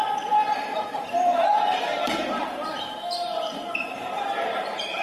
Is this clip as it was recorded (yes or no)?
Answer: no